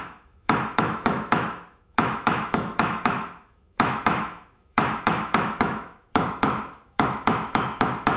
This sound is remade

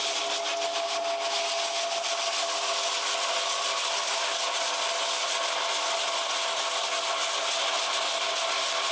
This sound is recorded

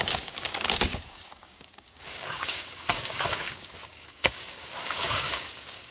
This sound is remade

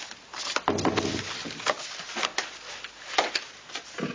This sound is recorded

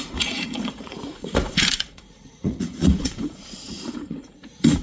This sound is remade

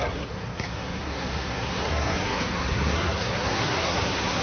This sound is remade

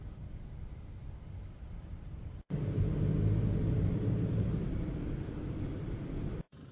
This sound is recorded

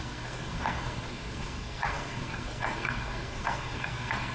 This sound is remade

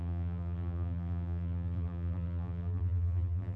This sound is remade